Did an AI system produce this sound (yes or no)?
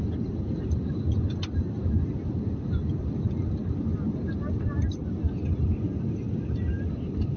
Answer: no